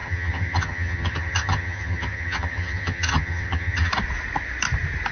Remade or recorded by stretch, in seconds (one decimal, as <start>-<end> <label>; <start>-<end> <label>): 0.0-3.9 remade; 3.9-5.1 recorded